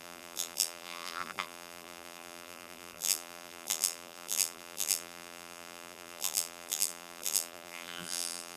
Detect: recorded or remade remade